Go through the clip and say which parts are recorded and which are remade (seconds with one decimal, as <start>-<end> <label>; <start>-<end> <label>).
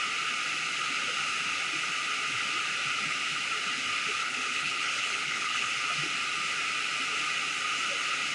0.0-4.2 recorded; 4.2-5.7 remade; 5.7-8.3 recorded